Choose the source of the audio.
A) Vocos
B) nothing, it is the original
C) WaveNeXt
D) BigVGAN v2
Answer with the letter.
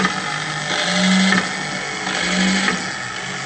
B